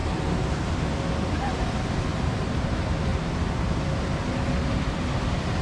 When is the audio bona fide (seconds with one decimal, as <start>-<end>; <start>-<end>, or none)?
0.0-2.1; 2.7-3.1; 3.9-5.6